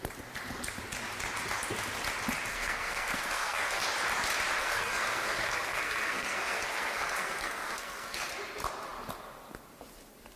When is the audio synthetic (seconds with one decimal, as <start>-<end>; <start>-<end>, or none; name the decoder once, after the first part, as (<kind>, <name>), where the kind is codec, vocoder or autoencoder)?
2.5-3.8 (codec, SNAC); 4.6-8.3